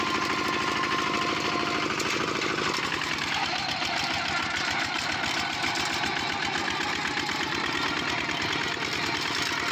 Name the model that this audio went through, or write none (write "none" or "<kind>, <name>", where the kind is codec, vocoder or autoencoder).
none